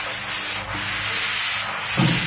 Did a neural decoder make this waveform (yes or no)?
no